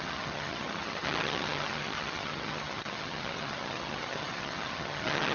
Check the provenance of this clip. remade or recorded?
remade